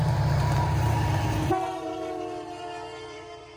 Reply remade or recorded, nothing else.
remade